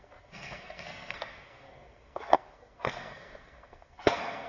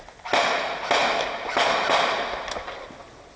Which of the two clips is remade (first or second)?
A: first